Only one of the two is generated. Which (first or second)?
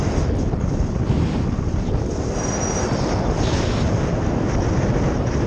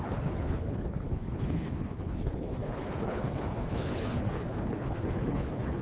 second